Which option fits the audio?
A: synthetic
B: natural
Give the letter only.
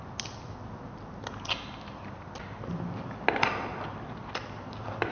B